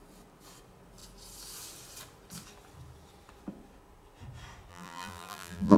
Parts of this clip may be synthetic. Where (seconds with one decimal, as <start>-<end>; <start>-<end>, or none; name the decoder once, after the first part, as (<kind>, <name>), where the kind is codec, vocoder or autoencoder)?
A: 4.7-5.8 (vocoder, BigVGAN v2)